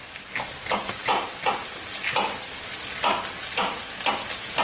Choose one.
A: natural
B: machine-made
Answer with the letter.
B